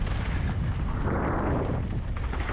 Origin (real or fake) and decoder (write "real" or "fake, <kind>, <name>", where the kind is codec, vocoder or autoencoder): real